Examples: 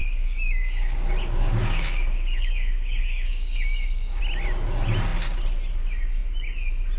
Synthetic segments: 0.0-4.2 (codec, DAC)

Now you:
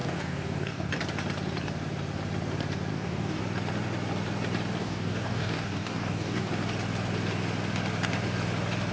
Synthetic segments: 0.0-1.0 (codec, DAC); 2.9-3.4; 4.8-6.5

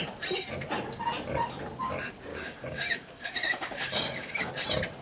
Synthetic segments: 2.3-4.5 (codec, DAC)